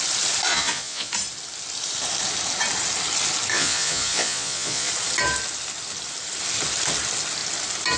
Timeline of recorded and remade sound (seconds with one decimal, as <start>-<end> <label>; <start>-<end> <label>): 0.0-0.5 recorded; 0.5-1.1 remade; 1.1-3.5 recorded; 3.5-4.9 remade; 4.9-8.0 recorded